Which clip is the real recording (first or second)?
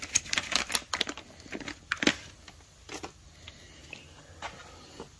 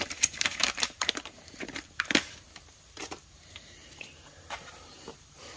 first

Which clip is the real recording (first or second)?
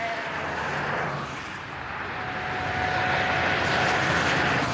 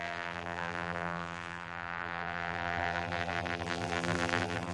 first